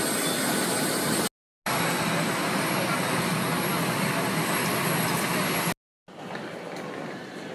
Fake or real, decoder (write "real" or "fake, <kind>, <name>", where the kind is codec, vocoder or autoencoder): real